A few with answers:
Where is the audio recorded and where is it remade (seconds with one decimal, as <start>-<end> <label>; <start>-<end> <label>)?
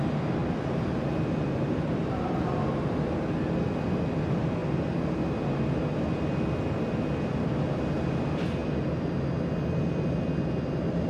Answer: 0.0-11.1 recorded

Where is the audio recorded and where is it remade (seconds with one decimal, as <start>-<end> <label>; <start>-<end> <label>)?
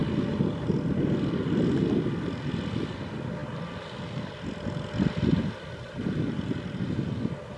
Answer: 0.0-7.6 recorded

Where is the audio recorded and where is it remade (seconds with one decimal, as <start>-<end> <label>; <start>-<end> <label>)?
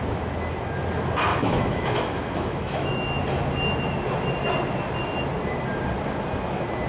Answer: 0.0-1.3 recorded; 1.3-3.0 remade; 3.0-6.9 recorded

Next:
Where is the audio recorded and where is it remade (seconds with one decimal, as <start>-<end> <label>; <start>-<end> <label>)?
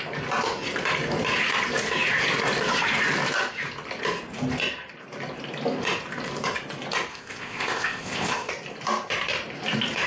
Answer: 0.0-7.1 recorded; 7.1-8.5 remade; 8.5-10.1 recorded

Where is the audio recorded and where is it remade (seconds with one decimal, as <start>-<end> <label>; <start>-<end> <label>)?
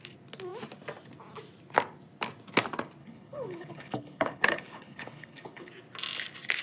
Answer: 0.0-3.0 recorded; 3.0-5.7 remade; 5.7-6.6 recorded